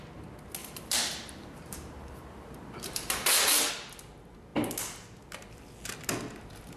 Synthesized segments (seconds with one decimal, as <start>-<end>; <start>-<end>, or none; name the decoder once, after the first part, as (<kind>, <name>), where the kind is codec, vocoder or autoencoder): 0.6-3.7 (vocoder, BigVGAN v2)